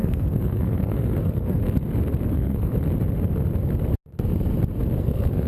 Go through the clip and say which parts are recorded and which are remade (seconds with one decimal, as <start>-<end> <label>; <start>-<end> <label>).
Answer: 0.0-1.6 remade; 1.6-2.3 recorded; 2.3-2.7 remade; 2.7-5.0 recorded; 5.0-5.5 remade